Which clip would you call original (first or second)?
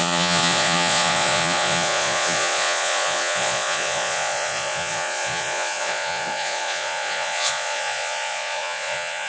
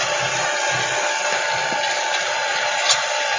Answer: second